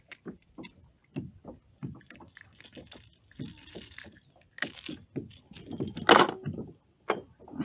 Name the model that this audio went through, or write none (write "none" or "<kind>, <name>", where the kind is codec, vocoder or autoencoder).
none